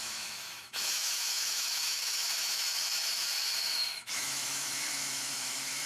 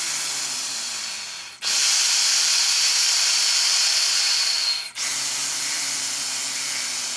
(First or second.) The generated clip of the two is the first